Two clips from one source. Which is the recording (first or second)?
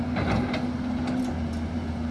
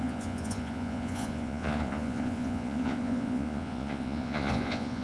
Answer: first